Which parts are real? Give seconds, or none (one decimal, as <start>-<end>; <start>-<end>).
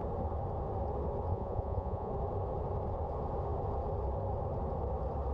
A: 0.0-1.3; 2.1-5.3